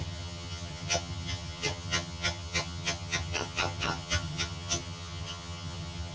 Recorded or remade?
remade